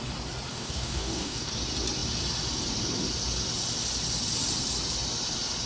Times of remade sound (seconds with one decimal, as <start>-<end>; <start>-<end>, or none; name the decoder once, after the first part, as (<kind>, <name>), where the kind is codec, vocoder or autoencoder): 0.5-1.5 (codec, DAC)